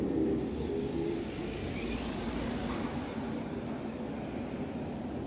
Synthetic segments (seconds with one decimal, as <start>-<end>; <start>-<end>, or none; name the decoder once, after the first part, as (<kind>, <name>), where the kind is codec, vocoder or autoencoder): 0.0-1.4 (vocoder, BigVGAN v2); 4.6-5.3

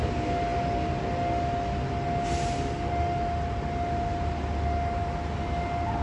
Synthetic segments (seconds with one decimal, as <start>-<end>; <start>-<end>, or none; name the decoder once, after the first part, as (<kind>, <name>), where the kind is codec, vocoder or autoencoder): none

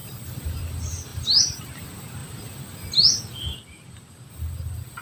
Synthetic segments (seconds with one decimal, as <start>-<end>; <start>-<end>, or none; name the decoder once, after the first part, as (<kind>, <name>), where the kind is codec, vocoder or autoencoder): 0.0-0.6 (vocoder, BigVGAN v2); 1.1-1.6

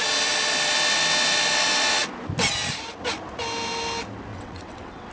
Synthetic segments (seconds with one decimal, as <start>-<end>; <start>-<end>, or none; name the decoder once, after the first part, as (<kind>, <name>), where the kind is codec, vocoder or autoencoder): 4.3-5.1 (vocoder, WaveNeXt)